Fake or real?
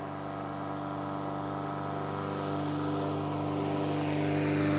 real